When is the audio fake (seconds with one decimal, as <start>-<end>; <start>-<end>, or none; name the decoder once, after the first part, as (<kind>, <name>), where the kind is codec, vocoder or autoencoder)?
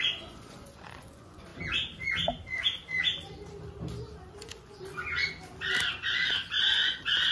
0.0-1.5 (vocoder, Vocos); 4.2-5.2; 5.9-7.3